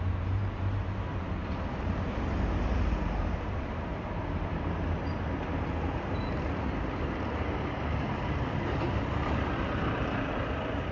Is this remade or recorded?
remade